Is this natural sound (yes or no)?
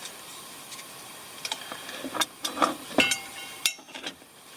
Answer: no